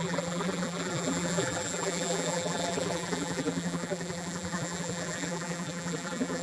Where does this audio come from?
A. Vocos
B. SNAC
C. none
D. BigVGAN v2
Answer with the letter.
D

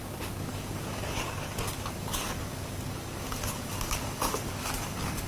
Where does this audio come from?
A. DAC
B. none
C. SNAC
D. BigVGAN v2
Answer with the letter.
A